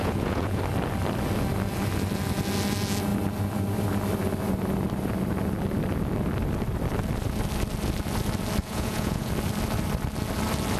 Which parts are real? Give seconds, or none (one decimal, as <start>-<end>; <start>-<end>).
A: 0.6-8.6; 9.3-10.8